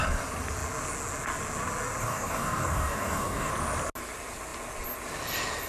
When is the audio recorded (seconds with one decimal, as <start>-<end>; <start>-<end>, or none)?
0.0-2.0; 3.5-5.7